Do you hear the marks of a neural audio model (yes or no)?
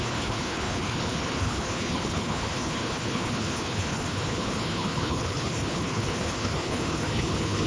yes